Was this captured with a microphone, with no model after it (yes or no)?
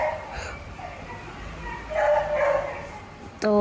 yes